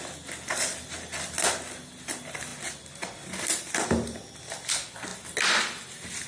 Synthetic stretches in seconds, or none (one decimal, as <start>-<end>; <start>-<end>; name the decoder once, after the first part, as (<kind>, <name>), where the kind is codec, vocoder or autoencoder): none